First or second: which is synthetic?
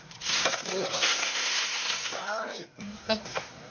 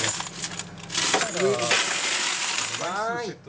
first